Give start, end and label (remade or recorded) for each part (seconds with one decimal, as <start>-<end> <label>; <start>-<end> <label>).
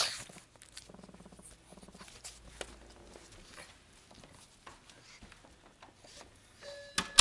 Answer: 0.0-7.2 recorded